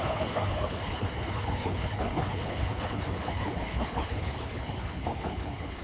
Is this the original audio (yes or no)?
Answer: no